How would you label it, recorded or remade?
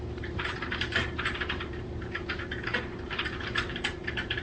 remade